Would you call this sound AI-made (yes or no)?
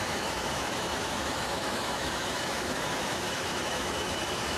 yes